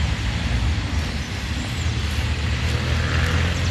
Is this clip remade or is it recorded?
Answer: recorded